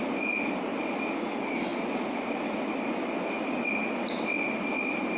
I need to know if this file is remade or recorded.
recorded